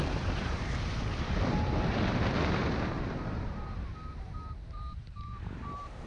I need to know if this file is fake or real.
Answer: fake